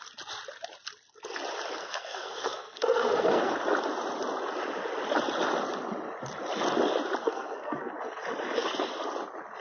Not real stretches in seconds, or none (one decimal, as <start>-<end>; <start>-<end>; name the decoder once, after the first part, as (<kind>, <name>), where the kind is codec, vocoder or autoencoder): 1.8-3.5 (codec, SNAC); 7.2-7.9